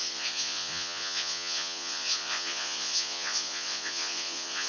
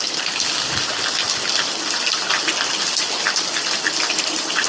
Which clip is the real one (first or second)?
second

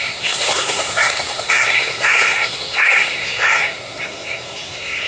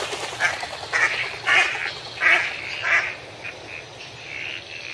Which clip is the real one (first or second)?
second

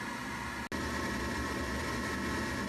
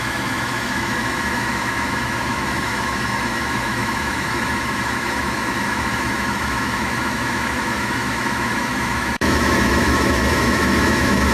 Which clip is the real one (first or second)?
first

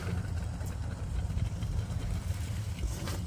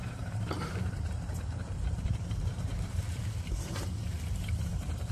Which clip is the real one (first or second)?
first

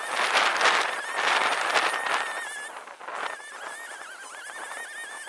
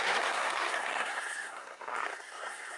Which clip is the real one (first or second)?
first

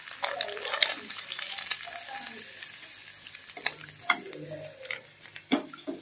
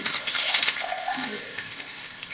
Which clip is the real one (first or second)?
first